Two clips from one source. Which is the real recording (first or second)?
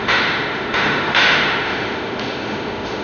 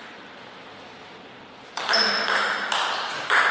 second